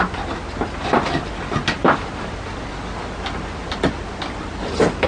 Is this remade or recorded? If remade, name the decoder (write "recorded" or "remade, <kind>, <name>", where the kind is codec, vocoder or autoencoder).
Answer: recorded